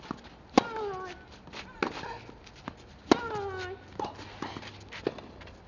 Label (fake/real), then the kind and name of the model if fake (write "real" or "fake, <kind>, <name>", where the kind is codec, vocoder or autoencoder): real